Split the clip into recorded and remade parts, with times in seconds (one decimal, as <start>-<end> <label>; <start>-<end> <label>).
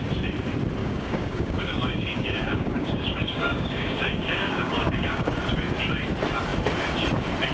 0.0-0.8 recorded; 0.8-5.3 remade; 5.3-7.5 recorded